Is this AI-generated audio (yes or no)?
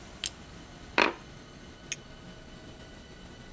no